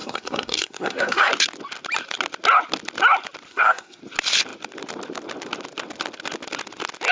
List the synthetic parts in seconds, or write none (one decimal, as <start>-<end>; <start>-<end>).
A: 0.0-1.3; 3.5-4.0